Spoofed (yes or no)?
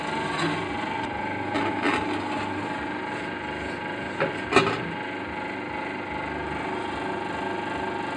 no